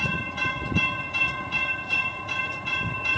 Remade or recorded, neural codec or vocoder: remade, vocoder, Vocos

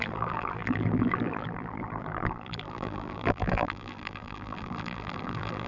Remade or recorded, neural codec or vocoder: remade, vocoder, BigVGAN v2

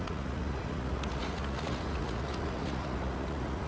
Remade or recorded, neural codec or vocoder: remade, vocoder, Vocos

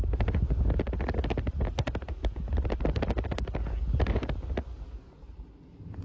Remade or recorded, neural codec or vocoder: recorded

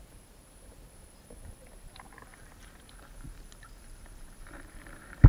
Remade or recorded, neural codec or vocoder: remade, vocoder, BigVGAN v2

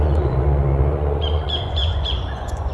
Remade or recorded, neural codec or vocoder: remade, vocoder, Vocos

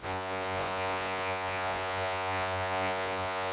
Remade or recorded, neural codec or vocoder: remade, vocoder, Vocos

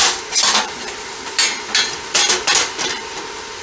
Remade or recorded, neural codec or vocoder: remade, vocoder, BigVGAN v2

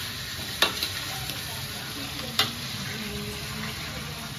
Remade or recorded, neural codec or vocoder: recorded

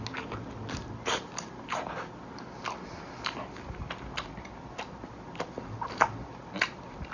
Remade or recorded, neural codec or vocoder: recorded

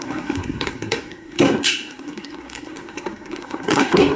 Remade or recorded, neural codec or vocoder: remade, codec, SNAC